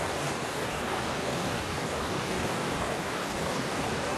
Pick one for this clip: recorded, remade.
remade